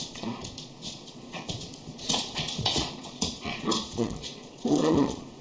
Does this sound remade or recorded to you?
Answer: remade